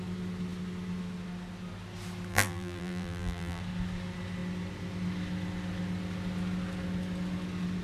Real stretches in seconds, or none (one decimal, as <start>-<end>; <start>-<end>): 0.0-2.3; 3.6-7.8